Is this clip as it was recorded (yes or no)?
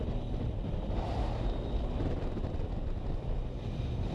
yes